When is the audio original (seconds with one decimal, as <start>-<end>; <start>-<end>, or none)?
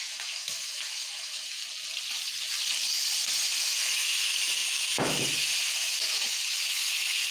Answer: 1.6-3.6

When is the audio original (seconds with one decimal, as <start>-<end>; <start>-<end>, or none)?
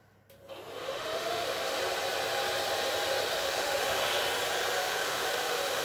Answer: 0.0-0.8; 1.8-3.3; 4.0-4.8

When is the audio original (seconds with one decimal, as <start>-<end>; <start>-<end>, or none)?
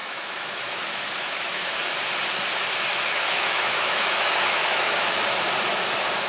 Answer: 1.9-2.9; 5.2-6.3